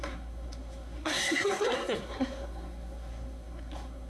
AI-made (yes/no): yes